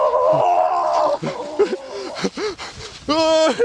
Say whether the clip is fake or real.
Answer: real